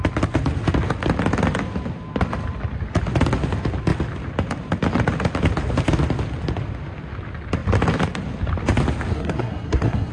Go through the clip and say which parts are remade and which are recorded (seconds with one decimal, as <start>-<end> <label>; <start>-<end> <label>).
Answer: 0.0-9.1 recorded; 9.1-10.1 remade